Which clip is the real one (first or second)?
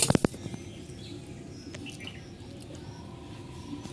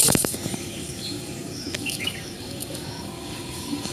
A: first